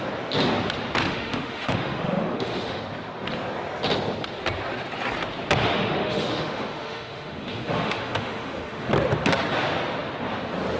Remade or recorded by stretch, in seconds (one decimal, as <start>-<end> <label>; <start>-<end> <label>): 0.0-1.0 recorded; 1.0-2.8 remade; 2.8-5.6 recorded; 5.6-8.9 remade; 8.9-10.8 recorded